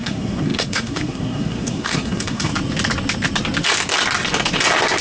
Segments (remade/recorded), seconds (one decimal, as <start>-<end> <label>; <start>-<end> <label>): 0.0-2.5 remade; 2.5-5.0 recorded